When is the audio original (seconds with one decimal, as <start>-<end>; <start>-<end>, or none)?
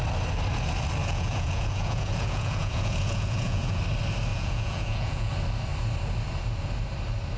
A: 0.0-1.0; 3.8-4.3; 5.3-7.4